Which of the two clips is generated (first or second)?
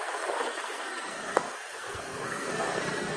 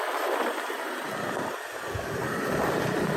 first